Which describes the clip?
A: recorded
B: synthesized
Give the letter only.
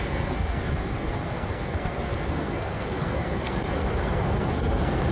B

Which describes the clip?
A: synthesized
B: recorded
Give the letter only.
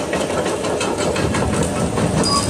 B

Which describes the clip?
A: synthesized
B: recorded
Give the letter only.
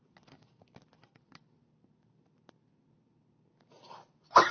B